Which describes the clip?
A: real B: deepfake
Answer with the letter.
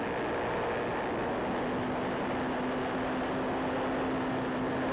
A